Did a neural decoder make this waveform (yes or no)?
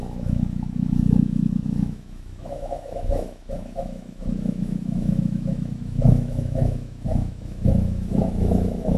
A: yes